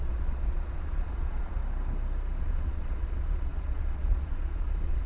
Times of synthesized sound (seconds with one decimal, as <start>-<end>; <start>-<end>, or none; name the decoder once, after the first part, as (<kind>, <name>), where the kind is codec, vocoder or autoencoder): 0.0-1.6 (vocoder, Vocos); 2.4-5.1